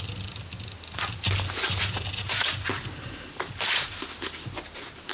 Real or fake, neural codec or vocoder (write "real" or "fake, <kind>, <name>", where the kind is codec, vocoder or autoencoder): real